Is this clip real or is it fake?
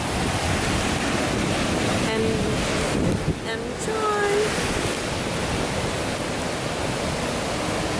real